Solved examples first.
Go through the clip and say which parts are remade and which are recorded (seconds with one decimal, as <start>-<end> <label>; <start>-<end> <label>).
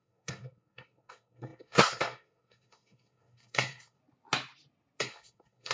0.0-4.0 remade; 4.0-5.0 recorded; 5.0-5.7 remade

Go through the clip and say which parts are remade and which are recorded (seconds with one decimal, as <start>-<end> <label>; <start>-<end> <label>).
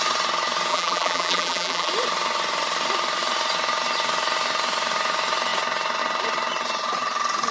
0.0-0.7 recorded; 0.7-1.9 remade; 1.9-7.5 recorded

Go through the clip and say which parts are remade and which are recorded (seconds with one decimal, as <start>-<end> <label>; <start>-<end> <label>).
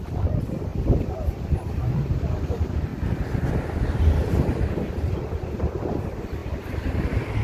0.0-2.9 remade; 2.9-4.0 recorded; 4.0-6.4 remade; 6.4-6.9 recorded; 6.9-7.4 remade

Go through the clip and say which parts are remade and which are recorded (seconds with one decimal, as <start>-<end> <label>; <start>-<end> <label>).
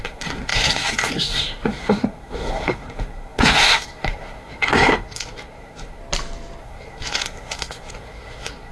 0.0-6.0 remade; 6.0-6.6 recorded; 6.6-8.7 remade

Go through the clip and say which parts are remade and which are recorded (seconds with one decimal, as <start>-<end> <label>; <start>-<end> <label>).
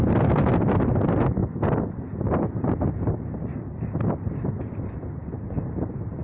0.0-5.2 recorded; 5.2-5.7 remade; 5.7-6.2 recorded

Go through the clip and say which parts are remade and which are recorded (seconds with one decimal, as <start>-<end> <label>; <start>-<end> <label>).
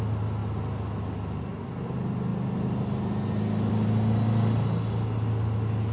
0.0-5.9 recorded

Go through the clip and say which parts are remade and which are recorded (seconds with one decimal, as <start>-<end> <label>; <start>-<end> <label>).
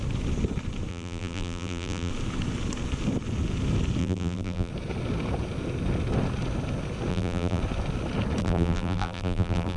0.0-0.9 recorded; 0.9-2.1 remade; 2.1-4.0 recorded; 4.0-4.7 remade; 4.7-7.1 recorded; 7.1-7.6 remade; 7.6-8.4 recorded; 8.4-9.8 remade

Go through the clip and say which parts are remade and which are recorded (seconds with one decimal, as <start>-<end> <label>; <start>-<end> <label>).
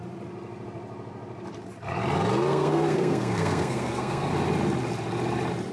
0.0-2.5 recorded; 2.5-4.3 remade; 4.3-5.7 recorded